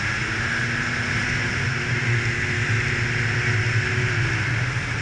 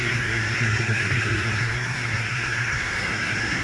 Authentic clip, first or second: first